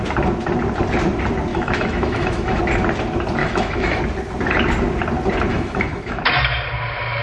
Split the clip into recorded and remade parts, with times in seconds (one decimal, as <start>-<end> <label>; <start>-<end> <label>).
0.0-1.5 recorded; 1.5-2.6 remade; 2.6-3.4 recorded; 3.4-4.0 remade; 4.0-5.5 recorded; 5.5-6.2 remade; 6.2-7.2 recorded